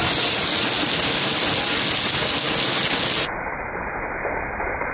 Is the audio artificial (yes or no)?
no